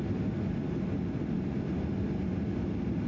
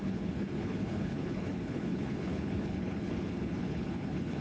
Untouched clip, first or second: first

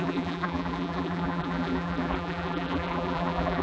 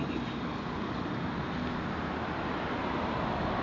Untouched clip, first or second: second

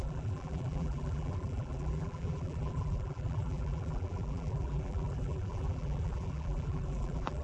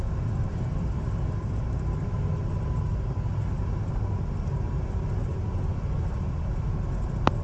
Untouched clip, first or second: second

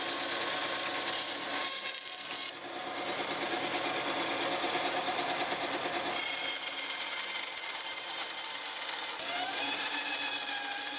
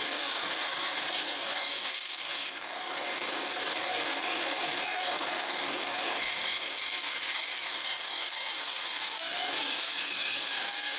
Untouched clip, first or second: first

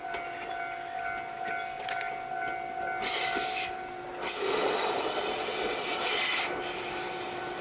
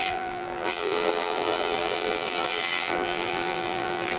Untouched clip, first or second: first